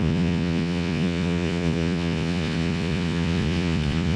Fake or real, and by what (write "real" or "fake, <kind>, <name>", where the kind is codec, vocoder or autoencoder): fake, vocoder, Vocos